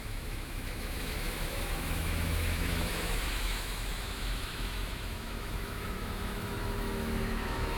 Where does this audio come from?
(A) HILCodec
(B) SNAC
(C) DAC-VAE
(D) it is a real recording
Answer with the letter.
C